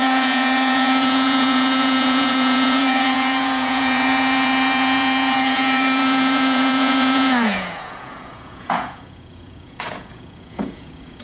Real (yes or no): no